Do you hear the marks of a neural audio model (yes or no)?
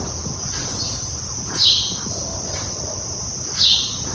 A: no